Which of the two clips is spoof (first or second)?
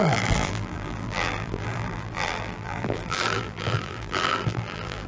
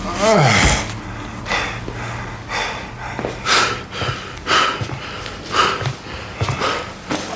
first